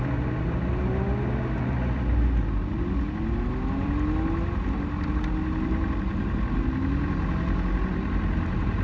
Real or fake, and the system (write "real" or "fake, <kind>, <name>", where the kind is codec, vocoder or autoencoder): real